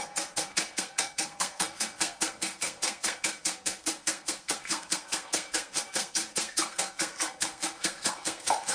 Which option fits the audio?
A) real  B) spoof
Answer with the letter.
B